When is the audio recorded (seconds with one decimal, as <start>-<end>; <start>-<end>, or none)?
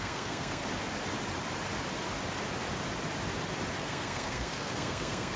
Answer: 0.6-3.8